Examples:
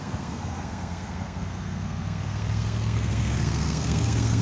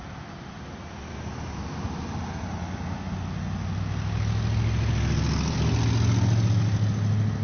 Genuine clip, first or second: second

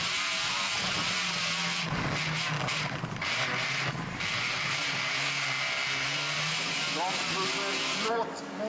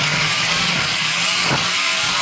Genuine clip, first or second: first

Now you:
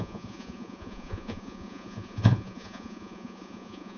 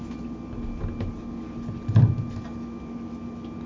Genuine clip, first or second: second